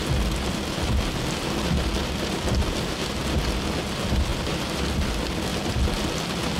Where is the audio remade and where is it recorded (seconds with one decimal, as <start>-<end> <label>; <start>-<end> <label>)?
0.0-2.0 recorded; 2.0-3.4 remade; 3.4-4.3 recorded; 4.3-5.0 remade; 5.0-6.6 recorded

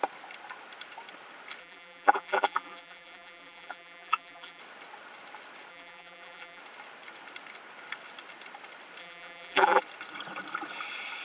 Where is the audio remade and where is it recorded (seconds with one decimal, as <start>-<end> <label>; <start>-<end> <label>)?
0.0-1.6 recorded; 1.6-4.6 remade; 4.6-5.7 recorded; 5.7-6.6 remade; 6.6-9.0 recorded; 9.0-9.8 remade; 9.8-11.2 recorded

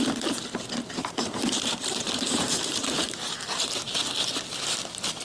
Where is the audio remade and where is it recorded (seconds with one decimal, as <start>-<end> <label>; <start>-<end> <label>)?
0.0-1.0 recorded; 1.0-3.4 remade; 3.4-5.2 recorded

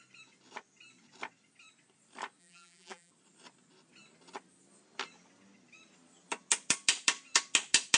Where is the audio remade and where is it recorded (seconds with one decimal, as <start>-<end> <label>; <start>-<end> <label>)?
0.0-2.4 recorded; 2.4-3.1 remade; 3.1-8.0 recorded